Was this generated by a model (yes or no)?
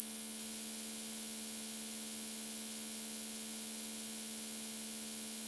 yes